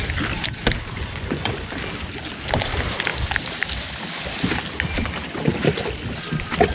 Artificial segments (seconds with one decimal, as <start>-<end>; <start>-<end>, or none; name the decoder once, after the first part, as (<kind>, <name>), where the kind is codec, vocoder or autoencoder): 1.0-1.7 (vocoder, Vocos)